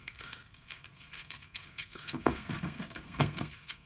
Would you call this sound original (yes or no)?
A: no